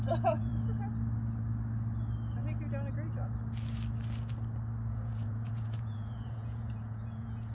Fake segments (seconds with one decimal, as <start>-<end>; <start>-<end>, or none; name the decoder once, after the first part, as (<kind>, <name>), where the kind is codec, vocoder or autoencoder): 0.0-0.5 (vocoder, Vocos); 4.9-7.5